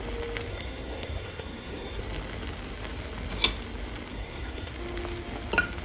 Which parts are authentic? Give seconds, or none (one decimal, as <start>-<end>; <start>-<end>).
0.0-0.5; 2.0-4.1; 4.7-5.8